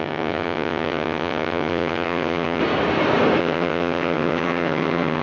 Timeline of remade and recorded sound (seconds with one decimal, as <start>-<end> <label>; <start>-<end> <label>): 0.0-2.6 remade; 2.6-3.4 recorded; 3.4-5.2 remade